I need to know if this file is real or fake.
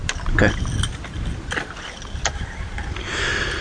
real